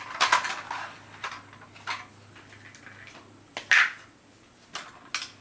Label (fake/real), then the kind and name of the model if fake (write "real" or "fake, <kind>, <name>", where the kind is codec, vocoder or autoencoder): real